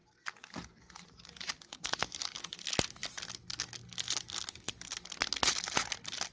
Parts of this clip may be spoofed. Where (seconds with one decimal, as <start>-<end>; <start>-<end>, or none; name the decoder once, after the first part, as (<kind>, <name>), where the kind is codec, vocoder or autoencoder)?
none